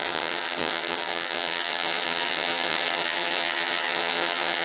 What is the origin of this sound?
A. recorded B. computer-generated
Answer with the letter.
B